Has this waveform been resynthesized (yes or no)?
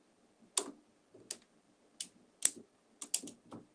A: no